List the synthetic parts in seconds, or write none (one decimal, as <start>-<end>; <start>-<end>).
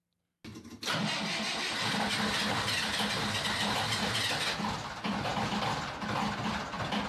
none